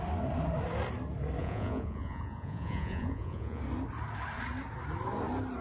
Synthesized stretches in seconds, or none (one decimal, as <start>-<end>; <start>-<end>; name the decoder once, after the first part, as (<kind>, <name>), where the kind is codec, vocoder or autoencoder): 1.4-3.6 (vocoder, Vocos)

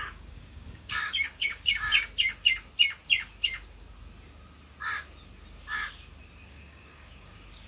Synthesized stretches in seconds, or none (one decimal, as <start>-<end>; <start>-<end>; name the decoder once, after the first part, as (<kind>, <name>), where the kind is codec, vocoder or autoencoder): 0.0-1.9 (codec, DAC); 6.5-7.7

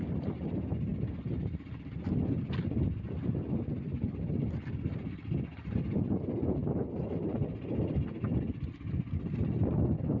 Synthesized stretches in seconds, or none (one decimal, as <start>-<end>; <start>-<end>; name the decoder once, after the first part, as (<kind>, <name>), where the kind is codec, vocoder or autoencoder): 0.9-2.1 (vocoder, BigVGAN v2); 5.5-6.1

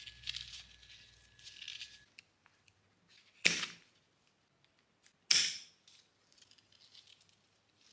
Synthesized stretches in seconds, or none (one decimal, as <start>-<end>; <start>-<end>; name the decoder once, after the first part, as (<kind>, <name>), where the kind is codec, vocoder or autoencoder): none

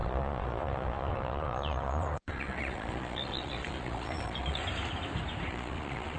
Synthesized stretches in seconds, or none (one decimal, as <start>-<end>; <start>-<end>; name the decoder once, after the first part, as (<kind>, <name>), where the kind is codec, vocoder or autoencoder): 0.0-4.6 (vocoder, Vocos); 5.5-6.2

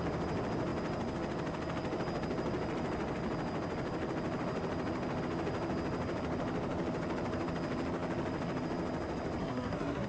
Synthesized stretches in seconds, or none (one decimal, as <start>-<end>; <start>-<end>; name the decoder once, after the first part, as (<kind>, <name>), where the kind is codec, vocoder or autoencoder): 9.4-10.1 (codec, SNAC)

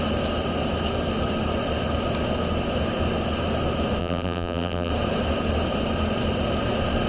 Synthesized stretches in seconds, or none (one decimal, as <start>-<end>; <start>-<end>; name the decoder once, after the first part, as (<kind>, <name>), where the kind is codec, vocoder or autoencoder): 4.0-4.9 (vocoder, BigVGAN v2)

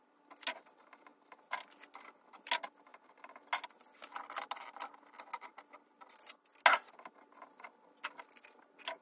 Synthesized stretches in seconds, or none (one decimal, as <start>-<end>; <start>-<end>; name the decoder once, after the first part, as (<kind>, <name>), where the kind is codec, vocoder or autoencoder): none